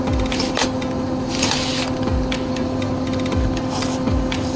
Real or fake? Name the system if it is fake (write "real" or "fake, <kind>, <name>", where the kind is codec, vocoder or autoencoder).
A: fake, vocoder, BigVGAN v2